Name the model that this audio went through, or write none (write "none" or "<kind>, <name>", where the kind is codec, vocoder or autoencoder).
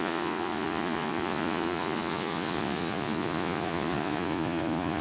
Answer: vocoder, Vocos